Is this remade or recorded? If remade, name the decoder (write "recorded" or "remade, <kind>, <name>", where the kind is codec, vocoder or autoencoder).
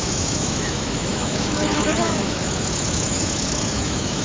remade, autoencoder, DAC-VAE